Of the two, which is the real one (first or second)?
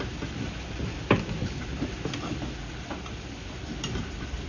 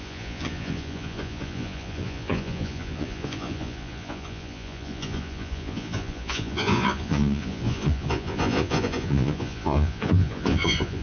first